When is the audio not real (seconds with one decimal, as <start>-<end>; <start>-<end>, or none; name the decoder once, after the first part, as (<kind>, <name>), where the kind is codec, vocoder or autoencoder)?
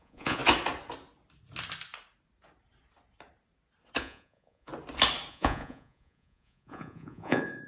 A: 0.0-0.4 (vocoder, Vocos); 4.0-4.7; 5.3-7.7